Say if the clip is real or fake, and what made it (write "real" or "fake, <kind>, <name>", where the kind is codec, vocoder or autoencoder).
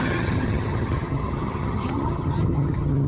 fake, vocoder, HiFi-GAN